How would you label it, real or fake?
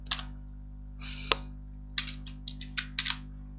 real